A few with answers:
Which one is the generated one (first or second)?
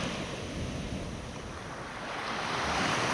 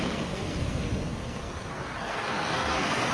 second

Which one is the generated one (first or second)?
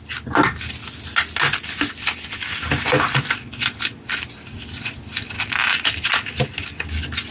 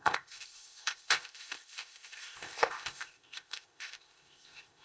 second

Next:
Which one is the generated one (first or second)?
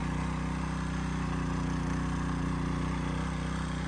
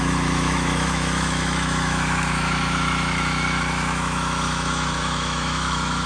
second